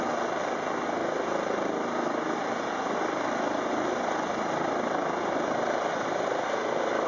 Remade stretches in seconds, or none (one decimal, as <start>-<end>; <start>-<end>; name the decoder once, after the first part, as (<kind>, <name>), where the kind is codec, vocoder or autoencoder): none